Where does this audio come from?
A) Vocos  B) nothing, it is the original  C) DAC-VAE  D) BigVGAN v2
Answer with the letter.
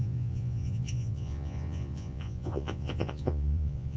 A